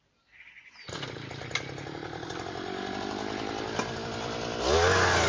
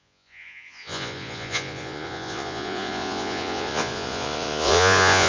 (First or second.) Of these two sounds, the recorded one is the first